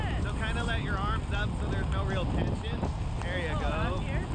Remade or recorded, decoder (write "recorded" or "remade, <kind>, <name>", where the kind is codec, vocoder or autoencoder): recorded